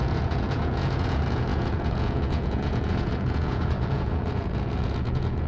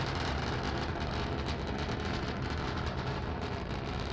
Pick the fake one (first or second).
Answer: first